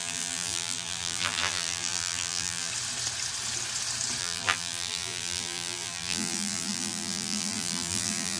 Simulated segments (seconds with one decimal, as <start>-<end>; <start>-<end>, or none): 0.0-2.7; 4.2-8.4